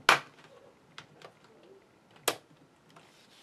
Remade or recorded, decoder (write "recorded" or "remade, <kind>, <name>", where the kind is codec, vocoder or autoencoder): recorded